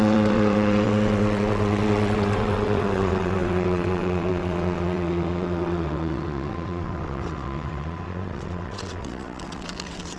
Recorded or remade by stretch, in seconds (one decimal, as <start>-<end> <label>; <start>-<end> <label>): 0.0-10.2 remade